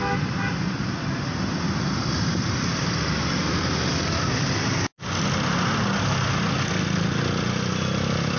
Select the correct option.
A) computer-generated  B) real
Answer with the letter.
B